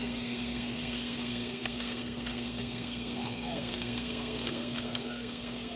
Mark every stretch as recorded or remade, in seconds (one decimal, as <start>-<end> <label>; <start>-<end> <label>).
0.0-5.8 remade